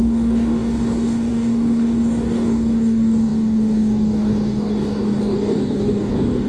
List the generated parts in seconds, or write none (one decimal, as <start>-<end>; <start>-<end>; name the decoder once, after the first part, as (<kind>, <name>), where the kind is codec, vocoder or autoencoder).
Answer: 0.0-6.5 (codec, DAC)